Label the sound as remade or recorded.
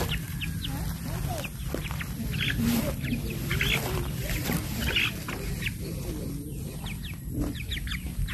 recorded